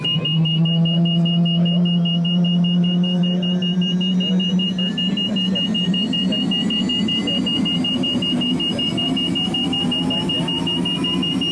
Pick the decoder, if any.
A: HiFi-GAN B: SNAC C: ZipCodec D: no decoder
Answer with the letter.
D